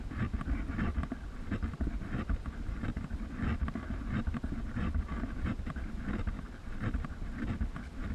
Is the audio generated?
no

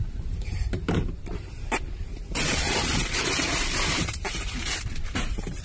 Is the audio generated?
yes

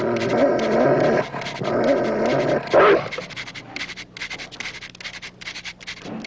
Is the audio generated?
no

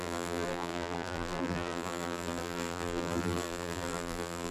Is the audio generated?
yes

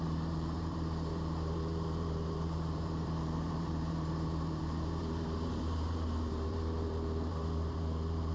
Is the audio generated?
yes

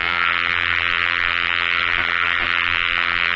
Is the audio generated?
yes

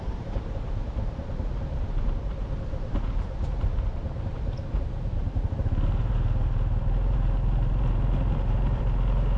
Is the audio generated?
yes